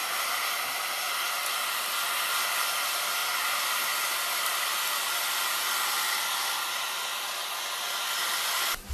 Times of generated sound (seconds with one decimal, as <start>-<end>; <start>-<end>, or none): none